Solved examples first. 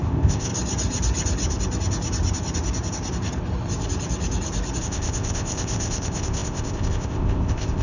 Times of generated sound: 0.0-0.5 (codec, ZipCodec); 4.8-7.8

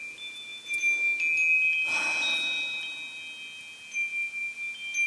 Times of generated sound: none

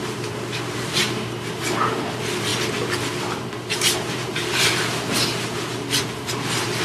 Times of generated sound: 0.0-2.5 (vocoder, BigVGAN v2); 3.7-6.8

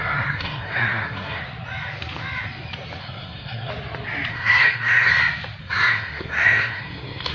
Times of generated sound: 0.0-1.4 (codec, SNAC); 3.0-3.7; 4.3-5.1; 5.6-7.3

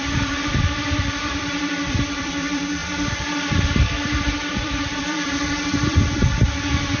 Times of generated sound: 0.0-7.0 (vocoder, BigVGAN v2)

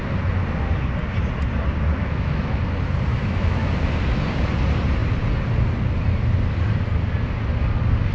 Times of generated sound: 2.0-2.6 (autoencoder, DAC-VAE); 3.1-3.7